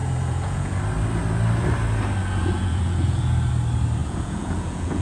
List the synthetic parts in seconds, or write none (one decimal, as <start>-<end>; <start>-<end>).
0.0-0.8; 2.2-3.5; 4.0-5.0